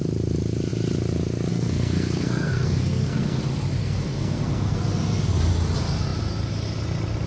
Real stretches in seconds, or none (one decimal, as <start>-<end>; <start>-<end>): 0.0-1.5; 3.4-3.8; 4.8-7.3